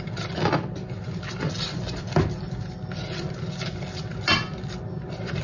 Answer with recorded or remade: recorded